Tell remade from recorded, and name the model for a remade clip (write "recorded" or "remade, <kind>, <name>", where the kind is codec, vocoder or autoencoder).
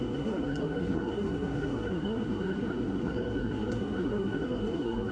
remade, codec, SNAC